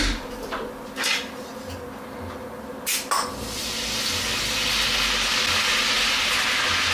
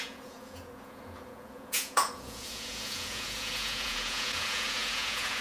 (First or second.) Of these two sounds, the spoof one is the second